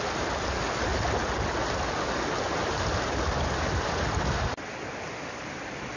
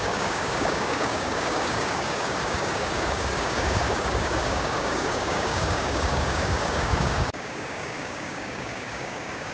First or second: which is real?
first